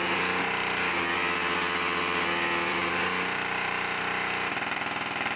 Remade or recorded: remade